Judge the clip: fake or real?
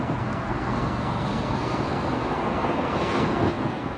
fake